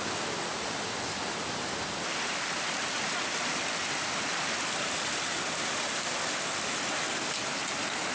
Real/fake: real